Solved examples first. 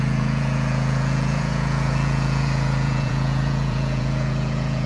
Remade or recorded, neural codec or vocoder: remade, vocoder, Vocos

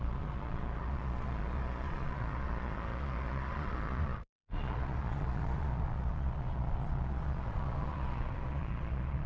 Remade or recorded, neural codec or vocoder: remade, vocoder, Vocos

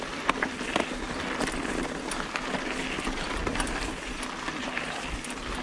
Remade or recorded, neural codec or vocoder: recorded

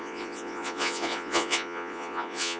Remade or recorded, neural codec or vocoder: remade, vocoder, Vocos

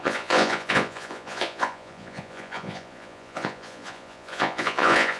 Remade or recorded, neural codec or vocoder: remade, vocoder, Vocos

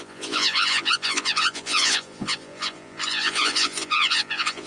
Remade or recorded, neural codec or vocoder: remade, vocoder, Vocos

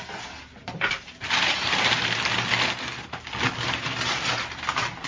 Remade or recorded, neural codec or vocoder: recorded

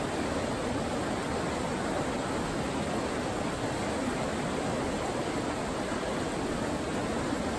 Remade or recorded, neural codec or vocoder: recorded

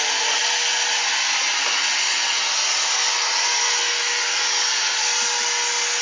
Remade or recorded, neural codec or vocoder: recorded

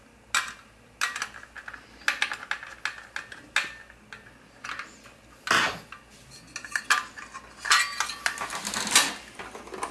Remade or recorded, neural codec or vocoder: recorded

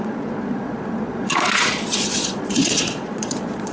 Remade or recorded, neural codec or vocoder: remade, vocoder, Vocos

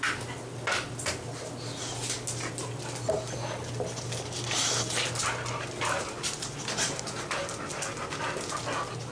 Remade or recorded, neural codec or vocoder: recorded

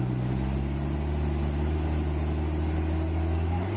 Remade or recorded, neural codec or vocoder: recorded